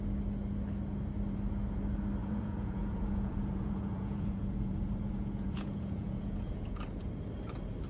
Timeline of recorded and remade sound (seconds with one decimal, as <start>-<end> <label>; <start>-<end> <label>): 0.0-2.2 recorded; 2.2-6.9 remade; 6.9-7.9 recorded